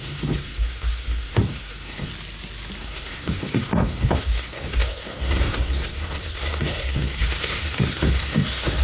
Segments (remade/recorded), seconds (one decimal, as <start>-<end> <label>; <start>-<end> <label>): 0.0-2.1 remade; 2.1-2.8 recorded; 2.8-8.8 remade